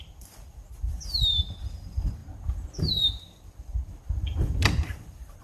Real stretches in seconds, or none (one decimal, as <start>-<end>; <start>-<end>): 2.2-2.9